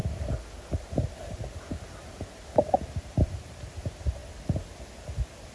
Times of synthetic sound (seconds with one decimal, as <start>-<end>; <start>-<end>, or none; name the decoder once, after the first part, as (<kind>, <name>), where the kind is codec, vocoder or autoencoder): 0.9-4.2 (vocoder, BigVGAN v2)